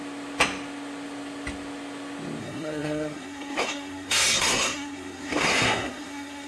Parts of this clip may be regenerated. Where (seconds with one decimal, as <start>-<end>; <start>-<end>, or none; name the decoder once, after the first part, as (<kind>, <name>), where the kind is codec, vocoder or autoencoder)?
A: 2.4-6.5 (codec, SNAC)